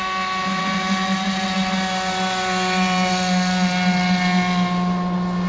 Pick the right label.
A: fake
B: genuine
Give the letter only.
B